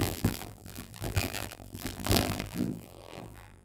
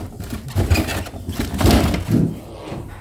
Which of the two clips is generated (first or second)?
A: first